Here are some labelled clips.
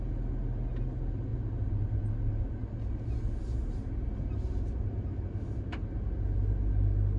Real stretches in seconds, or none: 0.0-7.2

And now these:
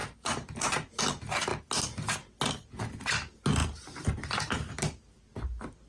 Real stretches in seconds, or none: 1.0-3.6; 4.7-5.9